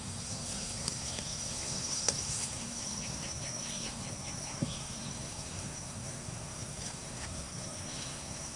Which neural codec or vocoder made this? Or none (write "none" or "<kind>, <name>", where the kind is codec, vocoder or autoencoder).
codec, SNAC